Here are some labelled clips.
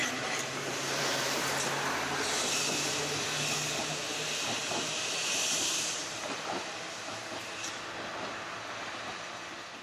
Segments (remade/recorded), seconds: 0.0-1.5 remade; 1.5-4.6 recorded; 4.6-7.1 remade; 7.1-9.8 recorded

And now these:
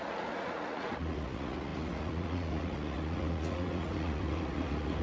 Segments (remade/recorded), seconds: 0.0-5.0 remade

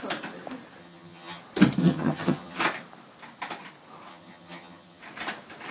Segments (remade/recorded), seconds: 0.0-0.8 recorded; 0.8-1.4 remade; 1.4-1.8 recorded; 1.8-2.6 remade; 2.6-4.1 recorded; 4.1-5.0 remade; 5.0-5.7 recorded

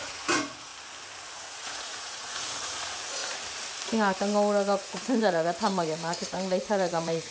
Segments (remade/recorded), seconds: 0.0-0.7 remade; 0.7-1.3 recorded; 1.3-3.2 remade; 3.2-5.2 recorded; 5.2-7.3 remade

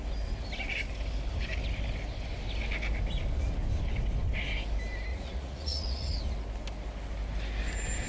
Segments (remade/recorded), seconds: 0.0-5.1 recorded; 5.1-6.2 remade; 6.2-8.1 recorded

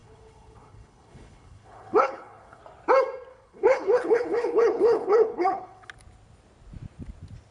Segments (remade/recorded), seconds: 0.0-2.6 remade; 2.6-3.3 recorded; 3.3-5.9 remade; 5.9-7.5 recorded

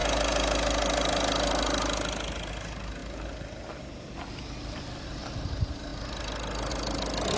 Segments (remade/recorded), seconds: 0.0-7.4 recorded